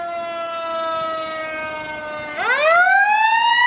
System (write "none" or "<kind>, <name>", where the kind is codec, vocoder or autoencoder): none